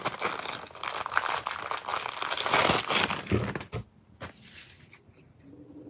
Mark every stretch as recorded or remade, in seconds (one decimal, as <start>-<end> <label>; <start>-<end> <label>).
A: 0.0-5.9 recorded